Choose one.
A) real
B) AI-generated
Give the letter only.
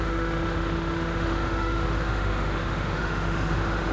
B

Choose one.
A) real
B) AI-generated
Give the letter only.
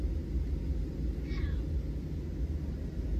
A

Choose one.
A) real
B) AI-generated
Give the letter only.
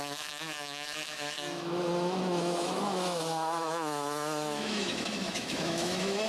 B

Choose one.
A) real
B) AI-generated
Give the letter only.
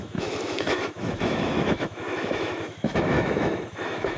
B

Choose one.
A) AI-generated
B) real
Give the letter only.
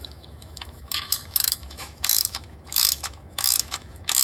A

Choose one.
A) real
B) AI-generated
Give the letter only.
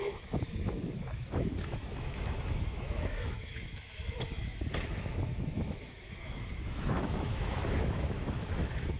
B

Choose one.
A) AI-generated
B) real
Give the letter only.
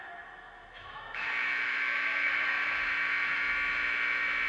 A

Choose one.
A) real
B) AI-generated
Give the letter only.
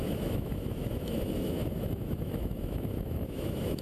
B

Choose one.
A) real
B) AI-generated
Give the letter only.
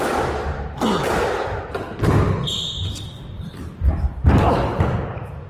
A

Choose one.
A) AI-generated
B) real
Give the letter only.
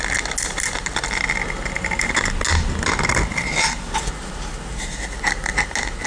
B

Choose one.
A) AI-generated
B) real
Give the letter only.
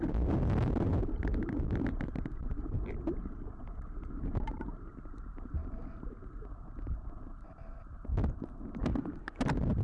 B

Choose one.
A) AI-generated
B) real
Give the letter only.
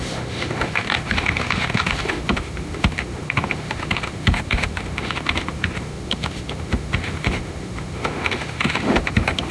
A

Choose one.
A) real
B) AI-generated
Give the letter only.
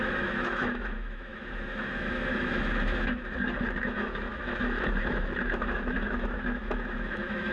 B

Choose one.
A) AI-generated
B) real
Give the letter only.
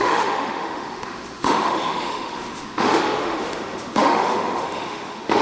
A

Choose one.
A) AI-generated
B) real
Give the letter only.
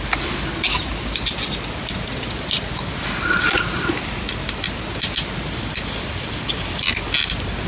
B